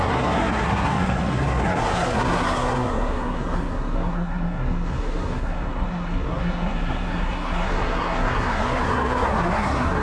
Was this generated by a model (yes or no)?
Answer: yes